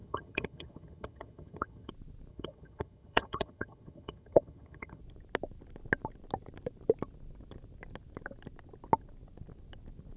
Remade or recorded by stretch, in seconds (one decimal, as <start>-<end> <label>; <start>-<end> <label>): 0.0-1.9 remade; 1.9-2.3 recorded; 2.3-5.0 remade; 5.0-10.2 recorded